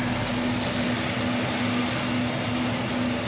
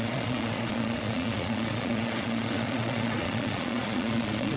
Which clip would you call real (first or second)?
first